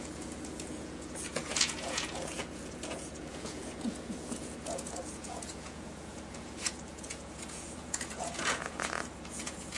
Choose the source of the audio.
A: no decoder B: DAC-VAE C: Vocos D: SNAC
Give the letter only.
C